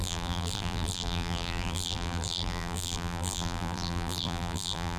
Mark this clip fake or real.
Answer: fake